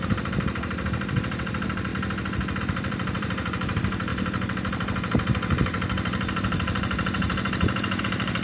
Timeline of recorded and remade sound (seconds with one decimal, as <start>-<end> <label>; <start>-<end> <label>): 0.0-1.9 remade; 1.9-2.6 recorded; 2.6-8.4 remade